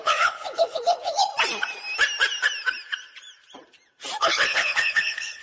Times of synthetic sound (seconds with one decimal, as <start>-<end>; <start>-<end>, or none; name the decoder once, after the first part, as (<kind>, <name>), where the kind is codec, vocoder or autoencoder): 0.0-1.3 (codec, HILCodec); 4.2-5.4